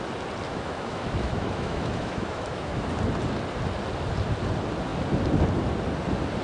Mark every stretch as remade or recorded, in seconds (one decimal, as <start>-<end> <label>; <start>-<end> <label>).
0.0-0.5 recorded; 0.5-2.9 remade; 2.9-6.4 recorded